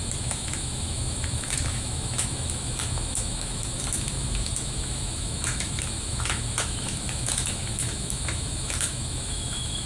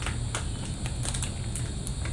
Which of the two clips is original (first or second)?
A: second